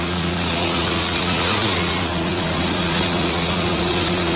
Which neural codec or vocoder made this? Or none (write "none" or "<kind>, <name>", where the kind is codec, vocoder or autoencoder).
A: vocoder, Vocos